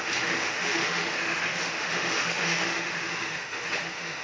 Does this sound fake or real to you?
fake